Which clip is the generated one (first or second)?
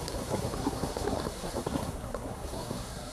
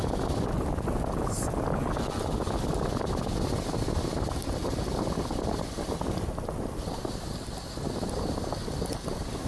first